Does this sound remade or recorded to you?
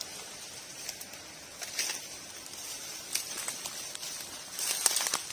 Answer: recorded